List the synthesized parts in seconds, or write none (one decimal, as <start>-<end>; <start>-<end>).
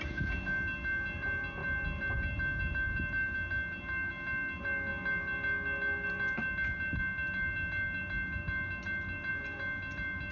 none